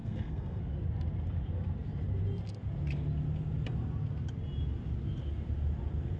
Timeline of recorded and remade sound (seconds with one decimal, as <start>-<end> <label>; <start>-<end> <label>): 0.0-0.6 remade; 0.6-6.2 recorded